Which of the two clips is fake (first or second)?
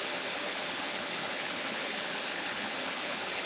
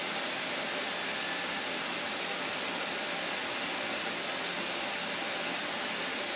first